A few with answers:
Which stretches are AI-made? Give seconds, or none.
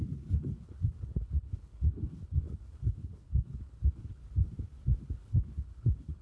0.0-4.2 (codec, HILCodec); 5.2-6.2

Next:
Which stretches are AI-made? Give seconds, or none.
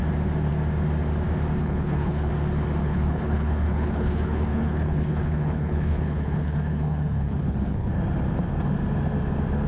1.6-2.3 (codec, HILCodec); 2.8-7.9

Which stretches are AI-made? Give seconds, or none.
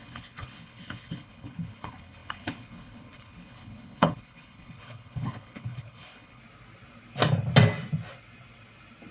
0.0-6.4 (codec, HILCodec)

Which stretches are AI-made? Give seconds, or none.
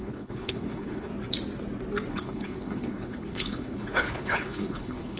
0.0-1.1 (codec, HILCodec); 2.1-5.2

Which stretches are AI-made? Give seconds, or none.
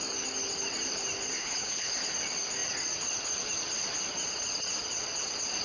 1.4-1.9 (codec, HILCodec)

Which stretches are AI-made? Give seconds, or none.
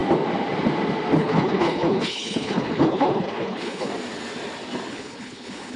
1.2-3.9 (codec, HILCodec); 4.9-5.8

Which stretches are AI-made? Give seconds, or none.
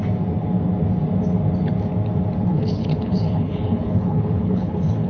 2.5-5.1 (codec, HILCodec)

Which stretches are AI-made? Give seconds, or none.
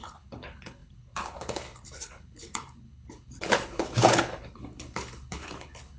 0.0-6.0 (codec, HILCodec)